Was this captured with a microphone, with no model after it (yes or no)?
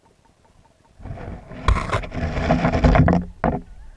yes